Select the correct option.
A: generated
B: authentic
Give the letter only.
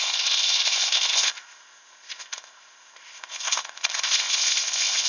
A